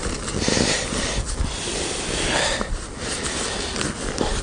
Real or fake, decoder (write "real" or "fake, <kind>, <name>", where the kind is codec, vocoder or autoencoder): real